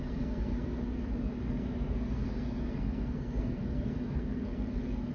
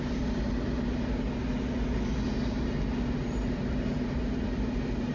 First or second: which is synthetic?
first